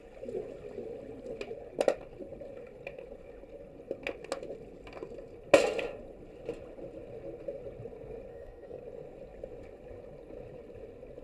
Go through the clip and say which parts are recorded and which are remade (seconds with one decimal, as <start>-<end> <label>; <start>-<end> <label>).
0.0-8.3 recorded; 8.3-8.8 remade; 8.8-11.2 recorded